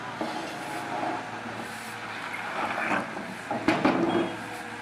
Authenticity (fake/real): real